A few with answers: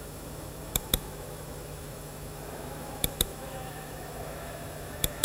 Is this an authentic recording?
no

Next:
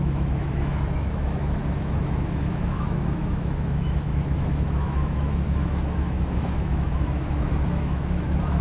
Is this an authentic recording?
no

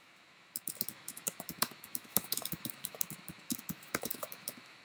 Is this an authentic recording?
no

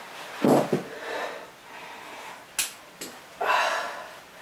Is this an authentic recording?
yes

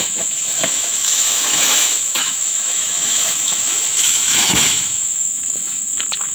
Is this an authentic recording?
no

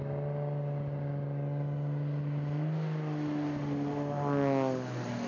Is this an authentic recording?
yes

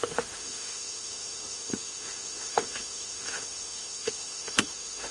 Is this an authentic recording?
no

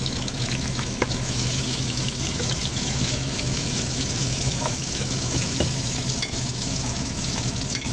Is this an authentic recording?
no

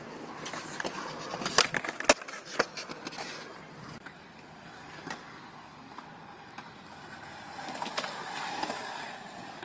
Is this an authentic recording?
yes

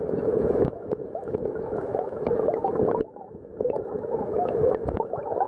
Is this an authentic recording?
no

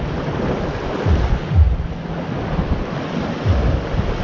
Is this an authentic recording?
yes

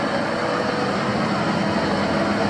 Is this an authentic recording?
yes